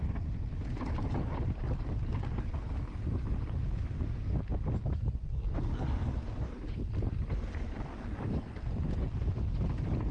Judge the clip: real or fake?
real